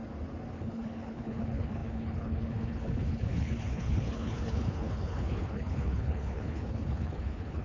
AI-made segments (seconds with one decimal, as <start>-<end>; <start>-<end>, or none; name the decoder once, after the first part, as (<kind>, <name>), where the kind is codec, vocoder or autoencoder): 0.5-7.6 (codec, HILCodec)